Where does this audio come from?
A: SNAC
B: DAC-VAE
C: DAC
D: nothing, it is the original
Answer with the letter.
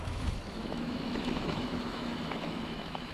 B